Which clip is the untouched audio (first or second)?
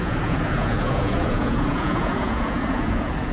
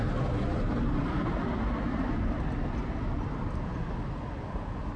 second